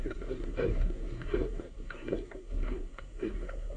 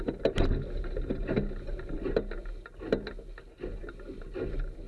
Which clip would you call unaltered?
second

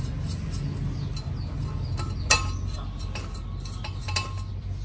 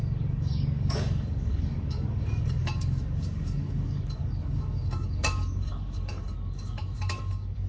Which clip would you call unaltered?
first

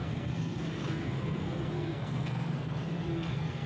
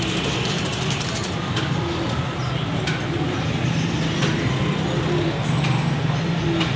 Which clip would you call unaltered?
second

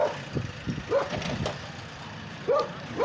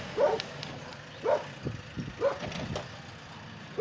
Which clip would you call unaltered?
second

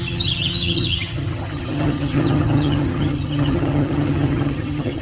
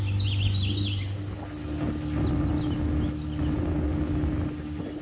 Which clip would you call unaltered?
second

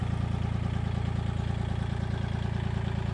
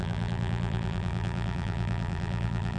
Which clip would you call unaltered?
first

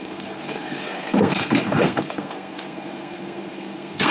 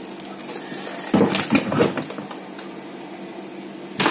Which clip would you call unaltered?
second